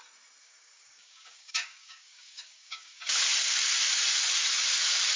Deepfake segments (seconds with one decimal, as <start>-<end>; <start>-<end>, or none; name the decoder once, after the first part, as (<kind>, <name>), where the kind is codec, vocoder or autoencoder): 0.4-3.1 (codec, DAC)